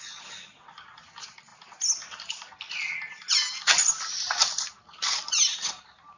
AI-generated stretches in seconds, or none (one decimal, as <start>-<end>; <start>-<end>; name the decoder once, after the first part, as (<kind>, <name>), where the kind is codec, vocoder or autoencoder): none